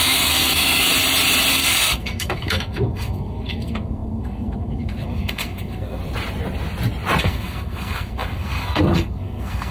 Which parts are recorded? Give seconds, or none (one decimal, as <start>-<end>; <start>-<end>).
0.9-1.5; 6.0-7.2